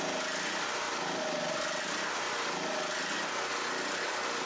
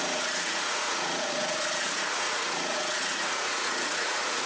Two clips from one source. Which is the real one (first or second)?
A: first